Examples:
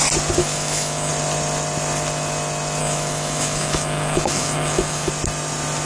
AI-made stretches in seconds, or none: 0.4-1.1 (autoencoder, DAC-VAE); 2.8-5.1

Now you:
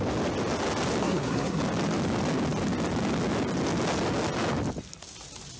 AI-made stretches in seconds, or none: 1.0-1.6 (codec, SNAC)

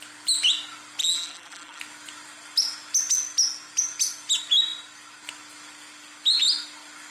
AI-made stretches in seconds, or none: 1.0-1.8 (vocoder, BigVGAN v2)